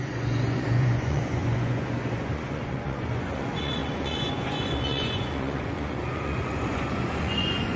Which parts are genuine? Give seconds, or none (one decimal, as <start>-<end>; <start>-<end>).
none